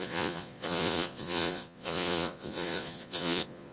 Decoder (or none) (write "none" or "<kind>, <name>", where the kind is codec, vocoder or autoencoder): vocoder, Vocos